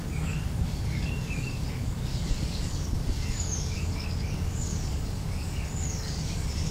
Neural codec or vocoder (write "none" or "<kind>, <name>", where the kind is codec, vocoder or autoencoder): codec, DAC